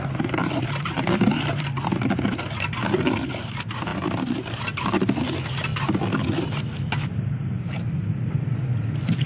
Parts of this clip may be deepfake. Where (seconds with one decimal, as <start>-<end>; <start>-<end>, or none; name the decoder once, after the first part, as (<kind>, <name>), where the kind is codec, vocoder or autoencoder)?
0.0-5.7 (vocoder, BigVGAN v2); 7.1-9.3